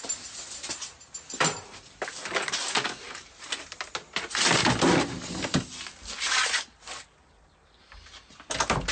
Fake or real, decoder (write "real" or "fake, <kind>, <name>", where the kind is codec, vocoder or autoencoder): real